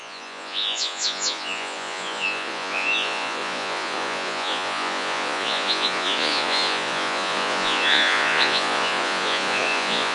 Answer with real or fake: fake